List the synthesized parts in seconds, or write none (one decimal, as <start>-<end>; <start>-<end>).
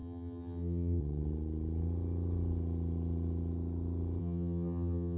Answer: 0.0-1.0; 4.2-5.2